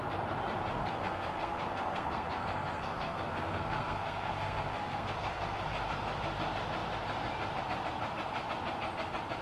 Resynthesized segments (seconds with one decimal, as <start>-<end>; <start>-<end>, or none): 0.7-5.6